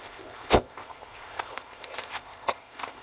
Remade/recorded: remade